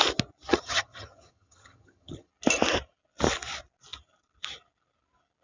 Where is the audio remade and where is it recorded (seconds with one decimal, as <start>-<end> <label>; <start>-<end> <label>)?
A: 0.0-0.5 recorded; 0.5-2.3 remade; 2.3-5.4 recorded